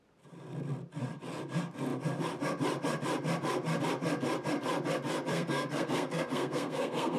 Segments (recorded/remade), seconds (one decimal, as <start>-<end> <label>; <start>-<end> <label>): 0.0-5.3 recorded; 5.3-7.2 remade